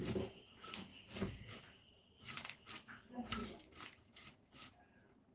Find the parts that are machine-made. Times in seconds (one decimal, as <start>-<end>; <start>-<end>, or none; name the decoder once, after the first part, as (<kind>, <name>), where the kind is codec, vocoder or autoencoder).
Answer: 0.0-0.9 (vocoder, BigVGAN v2); 1.5-5.3